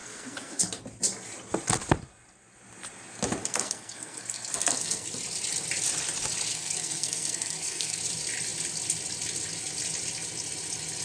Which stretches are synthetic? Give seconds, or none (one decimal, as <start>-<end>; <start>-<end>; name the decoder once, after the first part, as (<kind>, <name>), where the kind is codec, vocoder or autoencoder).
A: 0.0-0.8 (codec, SNAC); 3.4-5.1; 6.5-8.0